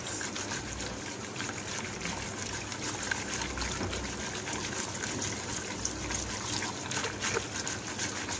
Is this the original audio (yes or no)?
yes